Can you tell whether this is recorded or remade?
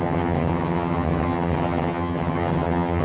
remade